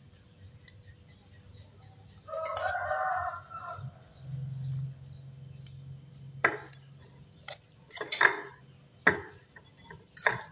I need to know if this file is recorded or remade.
recorded